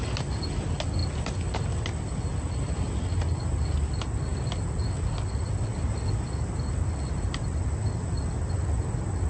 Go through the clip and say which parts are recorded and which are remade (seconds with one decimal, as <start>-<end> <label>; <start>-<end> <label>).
0.0-9.3 recorded